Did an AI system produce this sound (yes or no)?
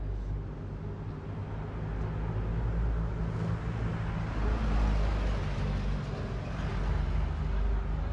no